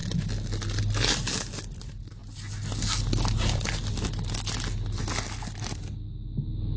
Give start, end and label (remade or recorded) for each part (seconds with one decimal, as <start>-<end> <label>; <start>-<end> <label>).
0.0-6.8 recorded